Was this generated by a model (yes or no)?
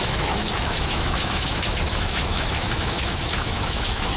yes